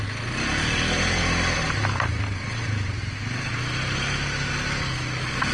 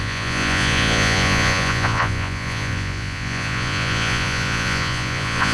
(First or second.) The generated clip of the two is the second